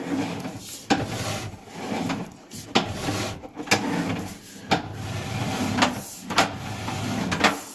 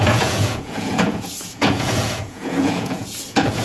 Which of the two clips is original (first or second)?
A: first